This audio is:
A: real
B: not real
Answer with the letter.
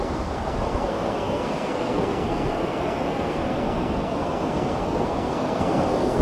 B